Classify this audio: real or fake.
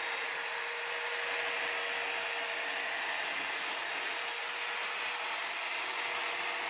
real